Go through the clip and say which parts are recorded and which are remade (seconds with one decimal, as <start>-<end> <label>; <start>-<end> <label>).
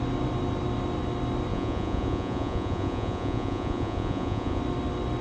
0.0-1.5 recorded; 1.5-4.6 remade; 4.6-5.2 recorded